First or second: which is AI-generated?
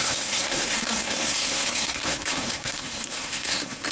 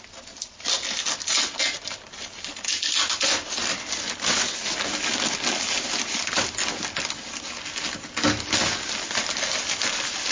first